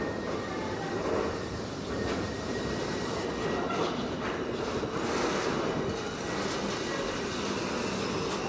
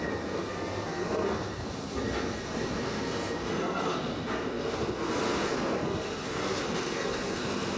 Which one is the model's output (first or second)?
second